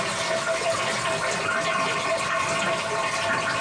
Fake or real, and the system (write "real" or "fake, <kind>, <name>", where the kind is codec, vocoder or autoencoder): real